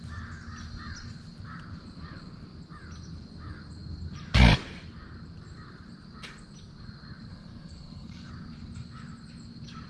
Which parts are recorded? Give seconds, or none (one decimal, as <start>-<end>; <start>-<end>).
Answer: 0.0-7.3; 8.3-9.9